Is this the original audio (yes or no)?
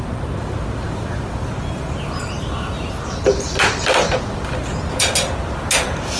yes